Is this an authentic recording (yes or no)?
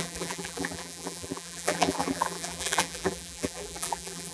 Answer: no